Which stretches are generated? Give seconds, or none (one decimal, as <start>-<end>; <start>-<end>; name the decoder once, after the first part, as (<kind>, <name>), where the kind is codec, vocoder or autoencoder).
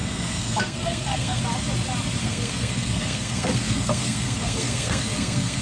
0.0-1.4 (codec, SNAC); 2.2-5.6